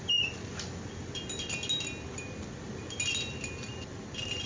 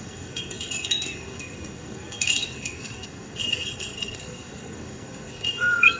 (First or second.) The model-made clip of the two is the second